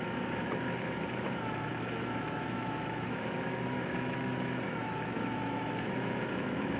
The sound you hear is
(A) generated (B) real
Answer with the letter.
A